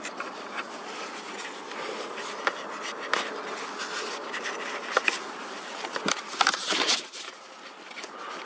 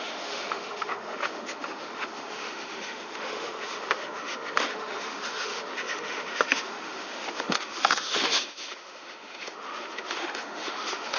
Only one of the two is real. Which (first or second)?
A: first